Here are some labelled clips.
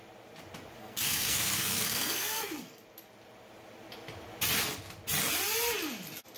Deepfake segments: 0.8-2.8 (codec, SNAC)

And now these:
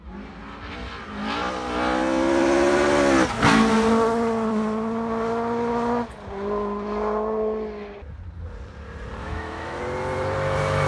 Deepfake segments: 9.2-9.8 (autoencoder, DAC-VAE)